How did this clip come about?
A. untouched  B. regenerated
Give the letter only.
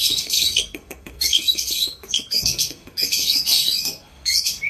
B